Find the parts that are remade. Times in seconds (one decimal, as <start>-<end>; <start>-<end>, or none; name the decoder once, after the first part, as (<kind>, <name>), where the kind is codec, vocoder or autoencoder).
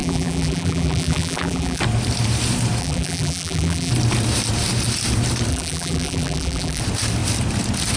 0.0-1.8 (vocoder, BigVGAN v2); 2.8-3.9; 5.5-6.8